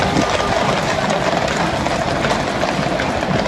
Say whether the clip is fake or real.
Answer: real